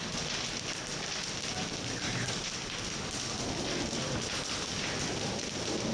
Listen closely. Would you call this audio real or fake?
real